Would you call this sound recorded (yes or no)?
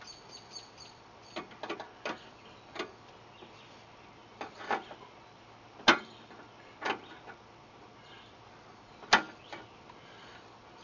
yes